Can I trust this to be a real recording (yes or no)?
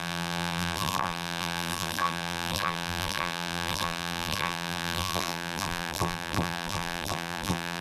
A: no